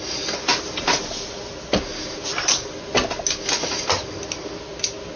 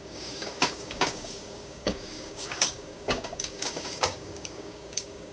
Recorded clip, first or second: first